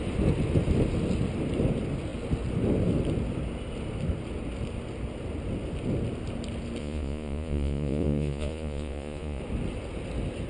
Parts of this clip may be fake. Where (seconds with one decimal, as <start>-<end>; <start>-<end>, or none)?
6.8-9.4